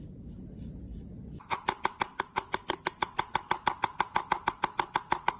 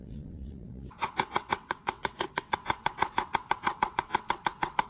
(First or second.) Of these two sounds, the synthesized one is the second